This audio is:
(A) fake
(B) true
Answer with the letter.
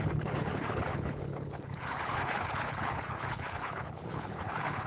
A